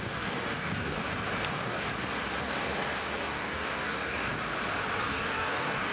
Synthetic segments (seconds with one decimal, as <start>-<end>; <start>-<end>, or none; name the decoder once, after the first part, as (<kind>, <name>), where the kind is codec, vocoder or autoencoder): 0.0-1.0 (codec, DAC); 1.5-1.9; 2.4-4.3; 5.0-5.9